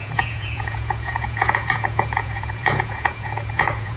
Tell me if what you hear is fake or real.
fake